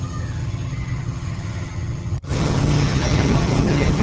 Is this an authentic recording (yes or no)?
no